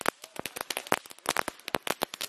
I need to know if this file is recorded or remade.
recorded